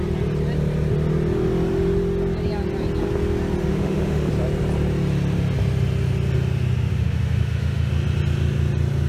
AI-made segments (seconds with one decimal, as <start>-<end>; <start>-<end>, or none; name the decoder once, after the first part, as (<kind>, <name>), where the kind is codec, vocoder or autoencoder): 3.7-4.3 (autoencoder, DAC-VAE); 6.9-7.9